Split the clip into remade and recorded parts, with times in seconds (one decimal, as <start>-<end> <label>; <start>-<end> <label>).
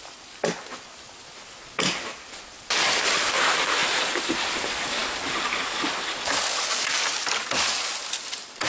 0.0-8.7 recorded